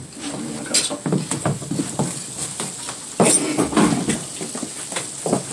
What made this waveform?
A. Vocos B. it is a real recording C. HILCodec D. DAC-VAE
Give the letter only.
B